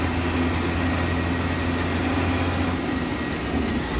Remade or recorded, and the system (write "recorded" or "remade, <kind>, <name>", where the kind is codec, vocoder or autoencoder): recorded